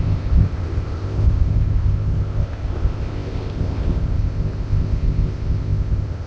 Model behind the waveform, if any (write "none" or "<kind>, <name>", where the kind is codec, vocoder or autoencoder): codec, ZipCodec